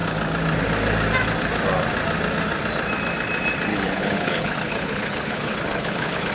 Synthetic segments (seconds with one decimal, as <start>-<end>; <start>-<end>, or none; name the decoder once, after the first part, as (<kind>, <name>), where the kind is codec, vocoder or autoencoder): 3.7-6.3 (codec, HILCodec)